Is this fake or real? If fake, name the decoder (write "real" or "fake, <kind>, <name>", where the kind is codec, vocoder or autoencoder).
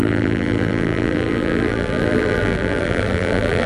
fake, vocoder, BigVGAN v2